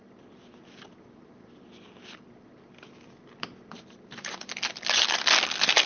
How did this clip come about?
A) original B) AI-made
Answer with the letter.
A